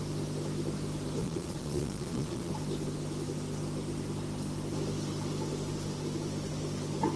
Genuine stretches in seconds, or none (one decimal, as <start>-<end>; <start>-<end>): 0.0-1.2; 2.5-7.2